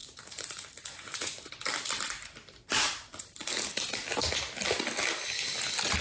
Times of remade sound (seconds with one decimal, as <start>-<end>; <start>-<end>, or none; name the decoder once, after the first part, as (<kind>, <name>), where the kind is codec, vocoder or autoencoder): 0.0-1.5 (vocoder, Vocos)